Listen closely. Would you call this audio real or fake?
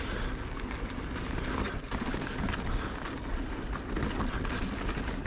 real